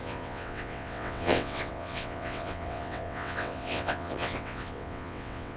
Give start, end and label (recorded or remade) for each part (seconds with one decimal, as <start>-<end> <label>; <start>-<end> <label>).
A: 0.0-5.6 remade

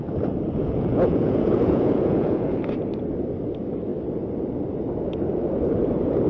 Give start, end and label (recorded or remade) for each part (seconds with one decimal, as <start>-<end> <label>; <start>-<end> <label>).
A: 0.0-0.6 recorded; 0.6-2.6 remade; 2.6-6.3 recorded

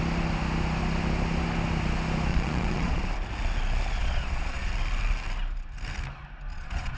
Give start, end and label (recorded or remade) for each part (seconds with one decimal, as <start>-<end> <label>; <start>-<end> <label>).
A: 0.0-2.3 recorded; 2.3-3.1 remade; 3.1-4.0 recorded; 4.0-4.7 remade; 4.7-6.5 recorded; 6.5-7.0 remade

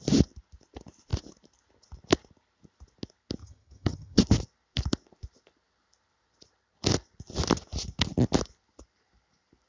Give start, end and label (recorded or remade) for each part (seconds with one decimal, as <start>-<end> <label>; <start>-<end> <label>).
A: 0.0-3.4 recorded; 3.4-4.2 remade; 4.2-9.7 recorded

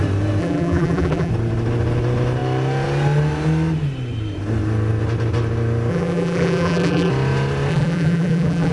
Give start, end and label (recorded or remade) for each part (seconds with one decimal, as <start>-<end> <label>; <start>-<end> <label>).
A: 0.0-0.4 recorded; 0.4-1.3 remade; 1.3-5.9 recorded; 5.9-7.1 remade; 7.1-7.7 recorded; 7.7-8.7 remade

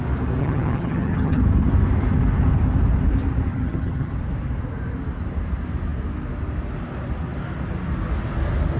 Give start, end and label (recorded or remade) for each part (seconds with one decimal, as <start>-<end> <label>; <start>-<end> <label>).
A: 0.0-0.4 recorded; 0.4-1.4 remade; 1.4-3.5 recorded; 3.5-4.1 remade; 4.1-8.8 recorded